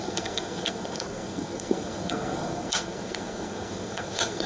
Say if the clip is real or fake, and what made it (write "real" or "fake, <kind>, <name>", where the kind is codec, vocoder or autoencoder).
fake, codec, SNAC